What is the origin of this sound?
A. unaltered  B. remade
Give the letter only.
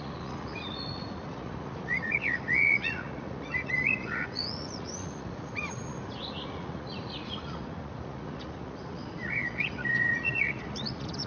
B